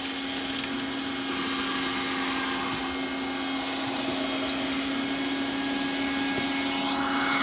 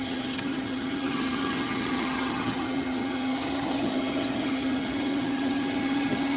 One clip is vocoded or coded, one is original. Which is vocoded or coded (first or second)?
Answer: second